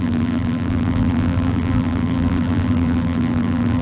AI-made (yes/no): yes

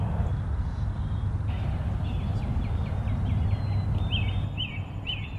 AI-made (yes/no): no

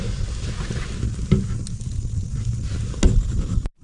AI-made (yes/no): no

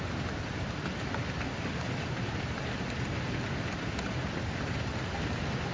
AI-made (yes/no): no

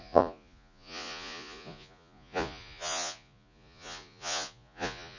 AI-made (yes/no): yes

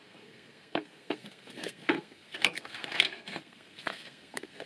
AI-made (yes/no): yes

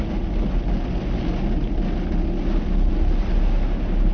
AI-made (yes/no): no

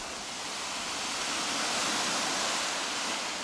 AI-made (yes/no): no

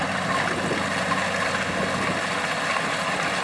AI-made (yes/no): no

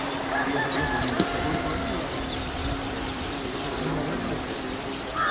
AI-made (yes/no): no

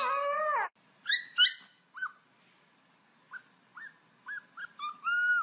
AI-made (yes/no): no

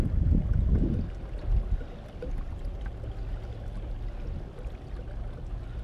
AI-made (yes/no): no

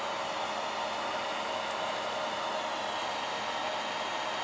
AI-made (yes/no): no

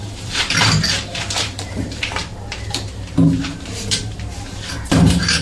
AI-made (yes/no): yes